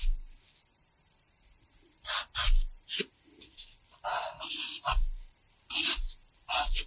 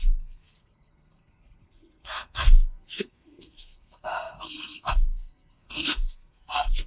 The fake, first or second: second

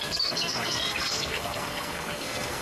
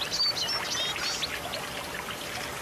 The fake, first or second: first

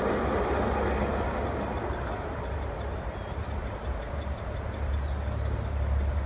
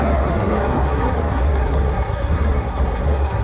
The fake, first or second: second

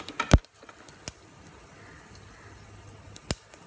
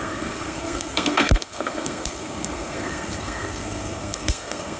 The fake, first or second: second